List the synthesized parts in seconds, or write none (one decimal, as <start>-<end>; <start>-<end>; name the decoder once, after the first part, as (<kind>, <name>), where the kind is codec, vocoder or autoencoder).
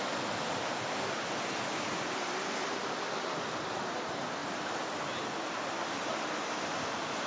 none